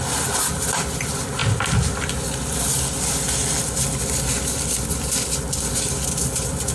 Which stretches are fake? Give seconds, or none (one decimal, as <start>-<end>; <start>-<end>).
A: none